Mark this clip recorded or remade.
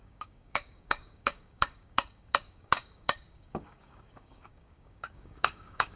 remade